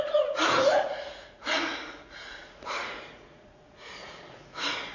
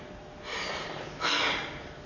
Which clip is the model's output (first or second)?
first